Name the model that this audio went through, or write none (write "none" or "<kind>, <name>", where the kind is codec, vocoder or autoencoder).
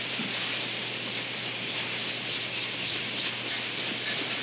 none